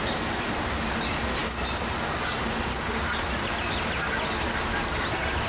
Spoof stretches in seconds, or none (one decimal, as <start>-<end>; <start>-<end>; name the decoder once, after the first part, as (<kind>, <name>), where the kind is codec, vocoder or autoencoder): none